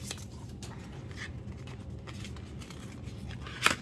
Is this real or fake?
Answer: real